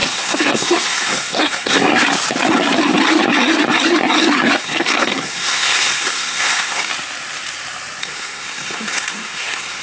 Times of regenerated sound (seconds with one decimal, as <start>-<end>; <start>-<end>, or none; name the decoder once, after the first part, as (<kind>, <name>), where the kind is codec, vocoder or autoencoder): 0.0-1.9 (codec, SNAC); 4.6-6.9; 8.0-9.8